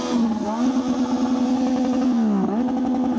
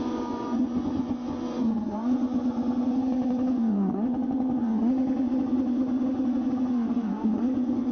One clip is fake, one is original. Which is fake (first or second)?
second